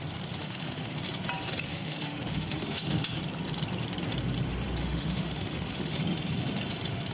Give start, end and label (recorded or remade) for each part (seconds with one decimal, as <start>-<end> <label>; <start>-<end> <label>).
0.0-0.4 recorded; 0.4-1.0 remade; 1.0-1.7 recorded; 1.7-3.2 remade; 3.2-4.8 recorded; 4.8-6.0 remade; 6.0-7.1 recorded